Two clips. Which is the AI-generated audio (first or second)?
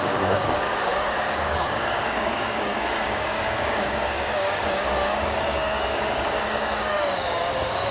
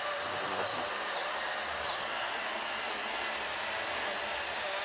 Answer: first